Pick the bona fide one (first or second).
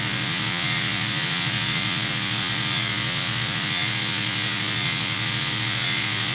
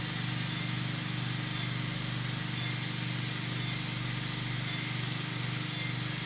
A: second